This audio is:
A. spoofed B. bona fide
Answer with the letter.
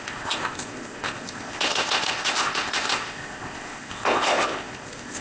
A